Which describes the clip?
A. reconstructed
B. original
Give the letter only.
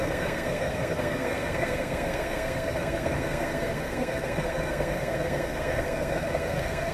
A